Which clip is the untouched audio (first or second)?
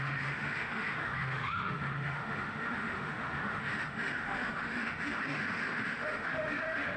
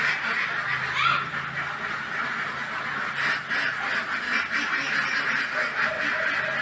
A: second